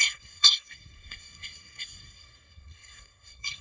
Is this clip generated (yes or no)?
yes